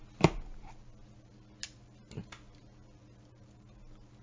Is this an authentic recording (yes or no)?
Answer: yes